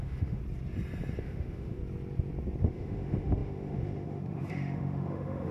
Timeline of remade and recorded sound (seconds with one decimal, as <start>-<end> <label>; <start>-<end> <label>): 0.0-0.4 remade; 0.4-1.2 recorded; 1.2-1.8 remade; 1.8-2.6 recorded; 2.6-5.5 remade